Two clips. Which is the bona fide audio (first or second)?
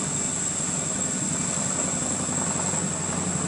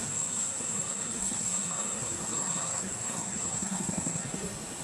first